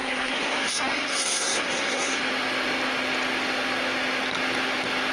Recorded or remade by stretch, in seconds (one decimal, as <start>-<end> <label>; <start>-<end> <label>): 0.0-2.2 remade; 2.2-5.1 recorded